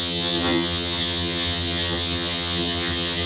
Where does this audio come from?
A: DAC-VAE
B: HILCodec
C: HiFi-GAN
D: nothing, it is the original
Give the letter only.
C